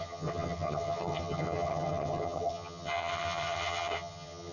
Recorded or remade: remade